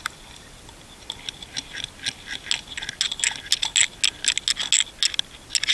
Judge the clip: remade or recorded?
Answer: recorded